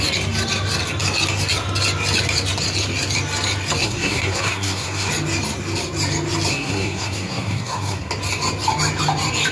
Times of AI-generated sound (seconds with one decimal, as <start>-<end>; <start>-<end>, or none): 3.8-5.1; 6.5-8.1